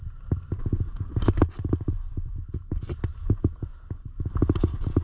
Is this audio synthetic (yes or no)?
no